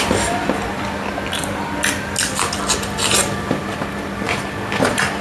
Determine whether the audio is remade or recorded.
recorded